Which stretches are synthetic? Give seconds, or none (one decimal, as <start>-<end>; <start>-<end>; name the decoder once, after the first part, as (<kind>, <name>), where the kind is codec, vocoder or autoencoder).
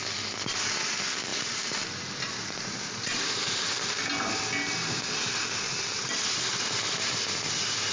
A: none